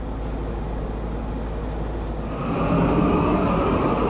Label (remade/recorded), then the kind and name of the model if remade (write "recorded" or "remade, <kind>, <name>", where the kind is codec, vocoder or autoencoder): recorded